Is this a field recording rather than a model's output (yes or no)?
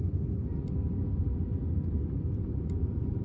no